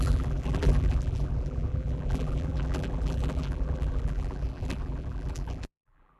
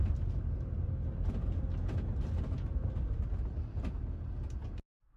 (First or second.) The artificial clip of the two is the first